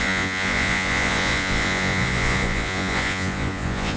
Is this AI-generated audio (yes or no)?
yes